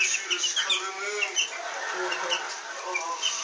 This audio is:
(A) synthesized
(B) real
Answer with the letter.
B